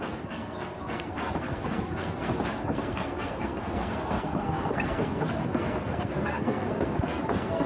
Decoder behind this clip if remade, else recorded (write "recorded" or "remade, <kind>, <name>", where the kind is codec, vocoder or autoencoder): remade, codec, SNAC